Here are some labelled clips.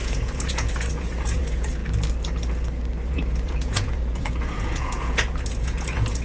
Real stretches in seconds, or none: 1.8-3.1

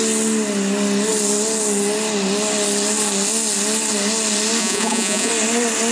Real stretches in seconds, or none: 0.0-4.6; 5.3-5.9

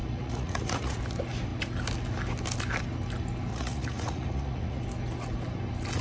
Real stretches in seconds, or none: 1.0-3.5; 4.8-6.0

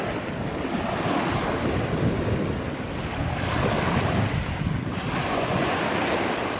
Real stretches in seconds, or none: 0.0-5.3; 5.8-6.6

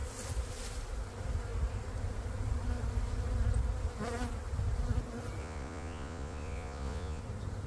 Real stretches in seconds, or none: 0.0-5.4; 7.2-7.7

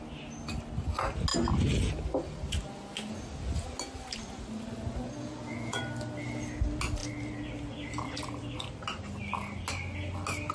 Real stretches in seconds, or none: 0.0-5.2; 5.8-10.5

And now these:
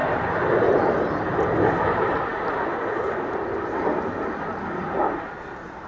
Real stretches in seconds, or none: 0.0-5.9

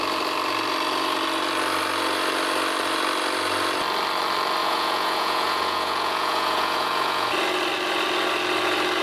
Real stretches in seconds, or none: 0.0-4.6; 7.3-9.0